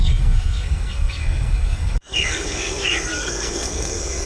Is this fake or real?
fake